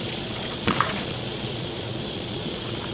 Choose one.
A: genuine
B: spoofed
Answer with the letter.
B